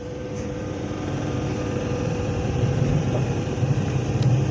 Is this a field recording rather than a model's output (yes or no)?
no